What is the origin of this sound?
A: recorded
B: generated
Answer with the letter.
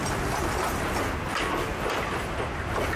A